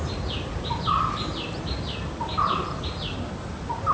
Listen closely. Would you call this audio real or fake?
fake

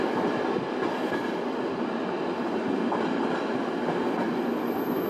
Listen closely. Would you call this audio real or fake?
real